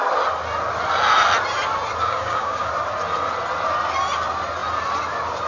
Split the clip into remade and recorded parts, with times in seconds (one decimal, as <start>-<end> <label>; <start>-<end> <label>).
0.0-2.0 recorded; 2.0-2.7 remade; 2.7-5.5 recorded